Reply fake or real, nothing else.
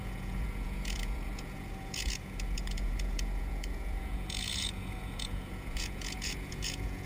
fake